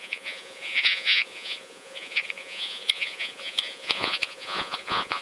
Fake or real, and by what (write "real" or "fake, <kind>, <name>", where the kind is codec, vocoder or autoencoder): fake, vocoder, Vocos